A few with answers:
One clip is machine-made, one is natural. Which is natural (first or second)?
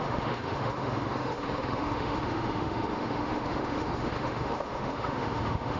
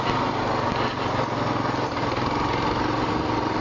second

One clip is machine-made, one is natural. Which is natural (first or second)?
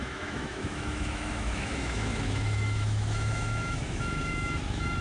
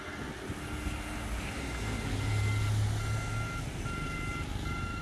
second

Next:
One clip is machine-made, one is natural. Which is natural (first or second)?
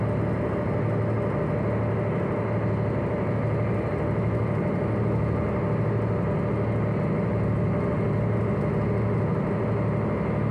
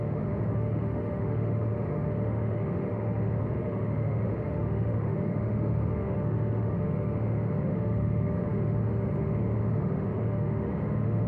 first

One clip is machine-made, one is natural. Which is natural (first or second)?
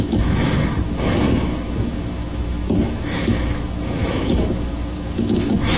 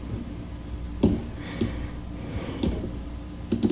second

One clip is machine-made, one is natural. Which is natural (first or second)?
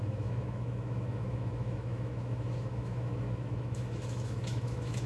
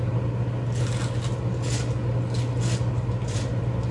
second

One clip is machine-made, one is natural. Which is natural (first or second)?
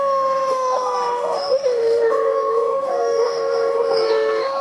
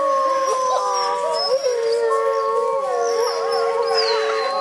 second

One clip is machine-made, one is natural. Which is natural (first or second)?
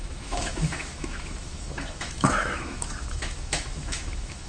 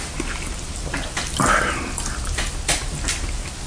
second